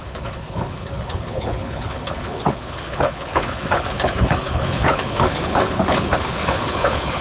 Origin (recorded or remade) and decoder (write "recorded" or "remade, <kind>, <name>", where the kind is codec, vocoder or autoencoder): remade, codec, HILCodec